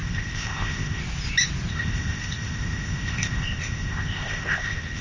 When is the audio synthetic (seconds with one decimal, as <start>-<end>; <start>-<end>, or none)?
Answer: 0.0-1.0; 1.7-5.0